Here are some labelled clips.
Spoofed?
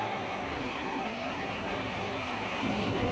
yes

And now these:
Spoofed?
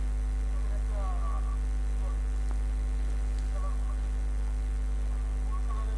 no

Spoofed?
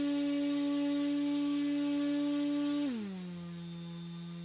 no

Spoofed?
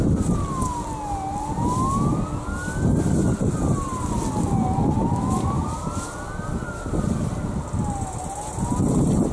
no